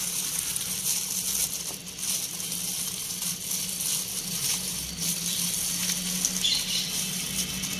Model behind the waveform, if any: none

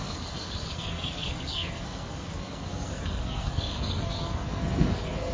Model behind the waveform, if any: codec, SNAC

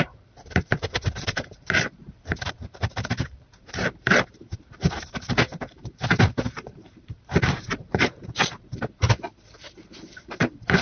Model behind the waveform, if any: vocoder, BigVGAN v2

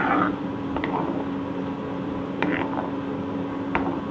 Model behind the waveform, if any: none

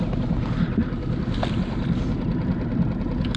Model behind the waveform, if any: none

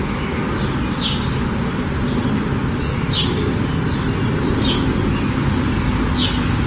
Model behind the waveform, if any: none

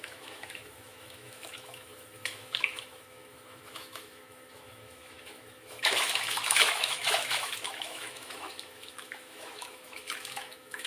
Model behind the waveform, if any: autoencoder, DAC-VAE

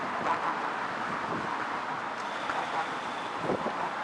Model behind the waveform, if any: none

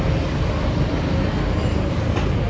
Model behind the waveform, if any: none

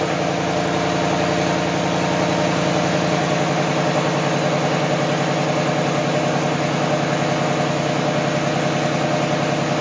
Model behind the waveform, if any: none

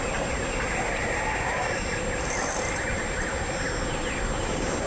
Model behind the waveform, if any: none